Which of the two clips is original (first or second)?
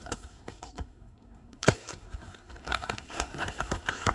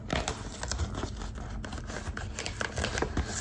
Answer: second